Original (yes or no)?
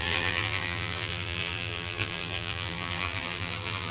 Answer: no